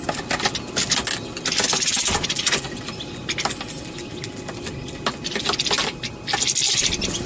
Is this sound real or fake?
real